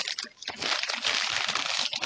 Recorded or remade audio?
recorded